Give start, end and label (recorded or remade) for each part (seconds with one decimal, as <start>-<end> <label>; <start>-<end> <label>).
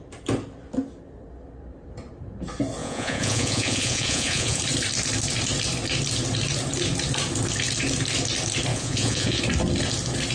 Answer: 0.0-2.8 recorded; 2.8-4.6 remade; 4.6-8.7 recorded; 8.7-9.4 remade; 9.4-10.3 recorded